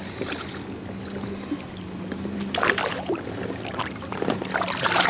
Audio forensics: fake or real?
real